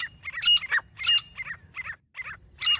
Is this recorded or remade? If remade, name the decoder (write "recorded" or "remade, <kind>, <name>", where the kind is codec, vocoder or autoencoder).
recorded